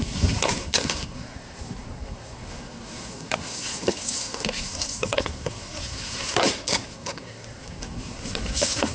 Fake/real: fake